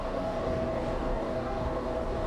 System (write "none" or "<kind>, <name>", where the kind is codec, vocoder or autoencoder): codec, DAC